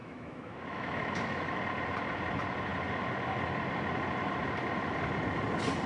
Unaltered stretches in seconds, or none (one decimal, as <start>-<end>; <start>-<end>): 1.6-5.9